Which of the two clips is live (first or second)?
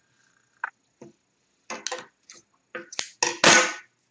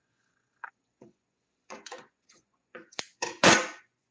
first